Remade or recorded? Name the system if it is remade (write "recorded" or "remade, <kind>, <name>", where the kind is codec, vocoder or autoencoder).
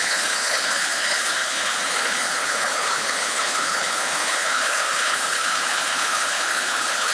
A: remade, codec, HILCodec